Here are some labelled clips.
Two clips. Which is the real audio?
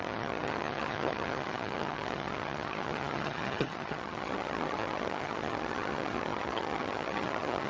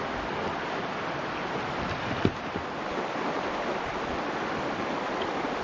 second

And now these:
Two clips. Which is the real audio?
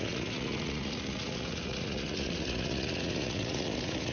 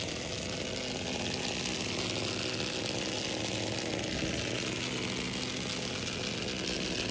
second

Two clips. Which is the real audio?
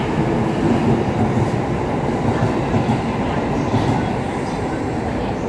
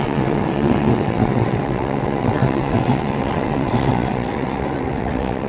first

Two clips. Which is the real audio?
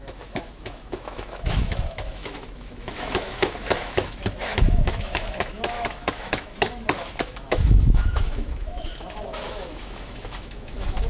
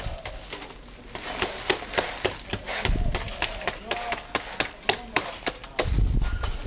second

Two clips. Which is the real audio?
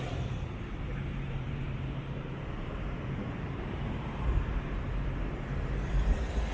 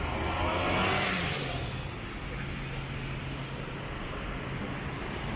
second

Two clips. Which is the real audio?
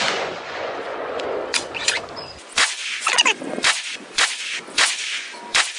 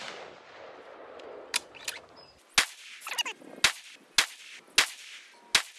second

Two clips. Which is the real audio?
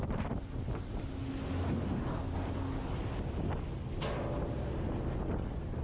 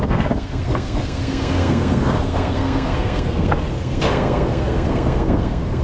first